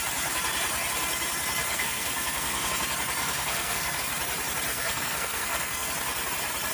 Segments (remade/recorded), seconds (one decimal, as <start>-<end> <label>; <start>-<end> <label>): 0.0-1.7 recorded; 1.7-2.7 remade; 2.7-3.2 recorded; 3.2-4.0 remade; 4.0-4.7 recorded; 4.7-5.9 remade; 5.9-6.7 recorded